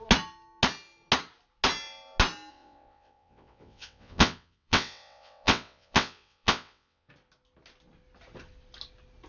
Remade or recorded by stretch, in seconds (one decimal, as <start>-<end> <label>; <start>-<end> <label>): 0.0-2.5 recorded; 2.5-7.1 remade; 7.1-9.3 recorded